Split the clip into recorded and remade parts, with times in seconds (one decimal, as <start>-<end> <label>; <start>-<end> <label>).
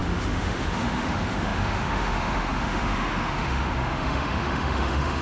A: 0.0-5.2 remade